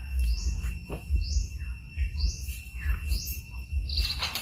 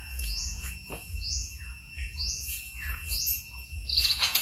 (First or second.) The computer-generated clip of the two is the second